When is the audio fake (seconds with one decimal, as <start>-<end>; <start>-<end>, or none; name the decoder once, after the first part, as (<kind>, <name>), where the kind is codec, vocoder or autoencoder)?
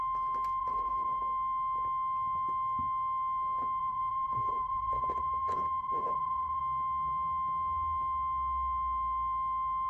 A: 0.6-1.2 (vocoder, Vocos); 3.8-6.6